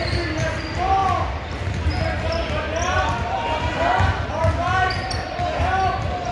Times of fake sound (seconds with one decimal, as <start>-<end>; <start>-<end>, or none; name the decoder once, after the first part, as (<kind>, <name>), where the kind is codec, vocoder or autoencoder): none